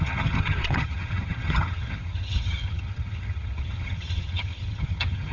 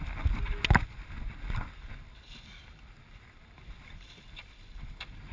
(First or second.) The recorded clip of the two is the second